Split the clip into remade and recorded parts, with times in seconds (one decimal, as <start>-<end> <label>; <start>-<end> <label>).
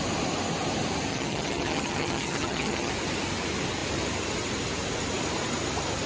0.0-1.1 recorded; 1.1-2.9 remade; 2.9-6.1 recorded